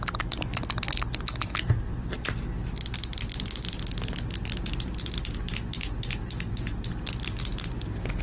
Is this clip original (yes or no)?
yes